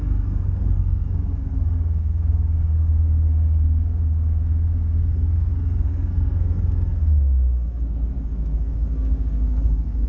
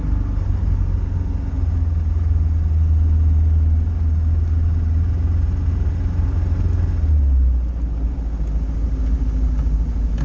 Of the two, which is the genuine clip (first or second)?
second